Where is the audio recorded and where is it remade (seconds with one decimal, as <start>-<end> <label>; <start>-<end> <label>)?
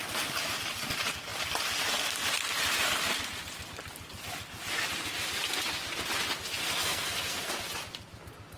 0.0-6.6 recorded; 6.6-7.5 remade; 7.5-8.6 recorded